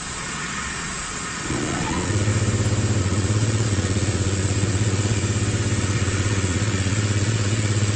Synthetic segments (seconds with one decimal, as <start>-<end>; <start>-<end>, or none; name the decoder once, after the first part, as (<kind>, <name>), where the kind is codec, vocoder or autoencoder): 0.0-2.3 (vocoder, Vocos); 3.0-5.2; 5.8-8.0